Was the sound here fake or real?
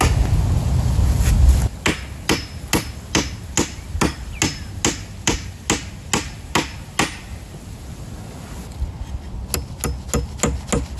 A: real